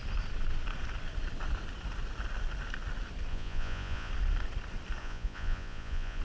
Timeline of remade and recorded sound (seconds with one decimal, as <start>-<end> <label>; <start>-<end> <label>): 0.0-3.3 recorded; 3.3-4.1 remade; 4.1-5.0 recorded; 5.0-6.2 remade